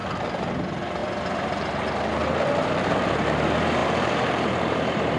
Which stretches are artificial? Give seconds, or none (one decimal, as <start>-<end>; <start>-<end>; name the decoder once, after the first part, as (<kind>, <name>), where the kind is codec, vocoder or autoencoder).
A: 0.0-0.5 (vocoder, BigVGAN v2); 1.0-1.7; 3.8-5.2